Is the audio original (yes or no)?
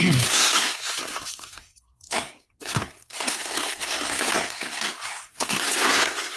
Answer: no